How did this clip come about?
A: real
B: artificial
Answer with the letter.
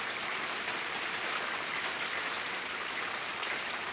A